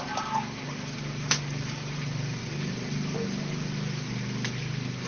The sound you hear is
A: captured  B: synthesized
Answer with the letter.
A